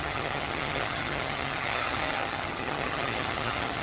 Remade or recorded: remade